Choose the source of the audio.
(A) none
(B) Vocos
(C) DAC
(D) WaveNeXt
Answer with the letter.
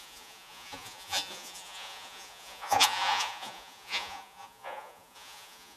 B